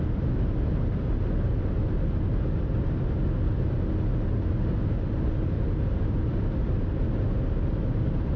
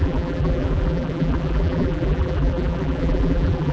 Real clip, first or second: first